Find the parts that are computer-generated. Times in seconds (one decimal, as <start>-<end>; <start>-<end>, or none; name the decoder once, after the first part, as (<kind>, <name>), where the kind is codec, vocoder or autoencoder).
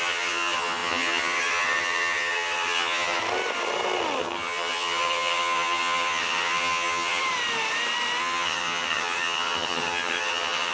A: 0.0-3.2 (vocoder, HiFi-GAN); 4.2-7.2; 8.2-10.7